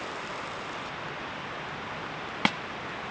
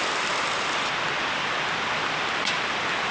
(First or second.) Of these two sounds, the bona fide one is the first